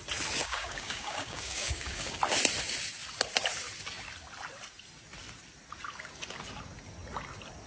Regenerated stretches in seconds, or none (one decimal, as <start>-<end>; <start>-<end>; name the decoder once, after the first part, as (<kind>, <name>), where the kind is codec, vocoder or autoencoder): 0.4-2.2 (codec, DAC)